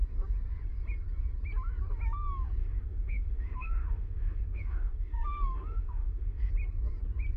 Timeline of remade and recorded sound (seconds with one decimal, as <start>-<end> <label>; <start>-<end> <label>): 0.0-2.6 recorded; 2.6-6.5 remade; 6.5-7.4 recorded